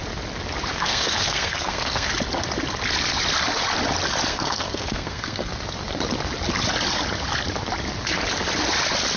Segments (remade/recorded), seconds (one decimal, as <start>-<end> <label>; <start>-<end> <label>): 0.0-0.7 recorded; 0.7-2.1 remade; 2.1-4.3 recorded; 4.3-5.5 remade; 5.5-9.2 recorded